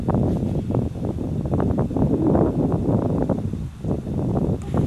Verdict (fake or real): real